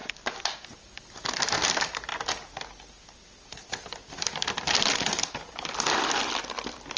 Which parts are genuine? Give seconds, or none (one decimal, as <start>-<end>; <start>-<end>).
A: 1.1-7.0